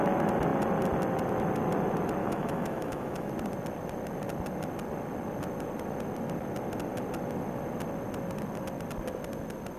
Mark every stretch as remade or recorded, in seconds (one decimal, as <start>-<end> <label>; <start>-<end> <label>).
0.0-2.2 recorded; 2.2-3.3 remade; 3.3-9.8 recorded